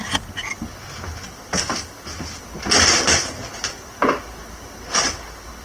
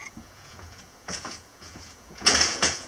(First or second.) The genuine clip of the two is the first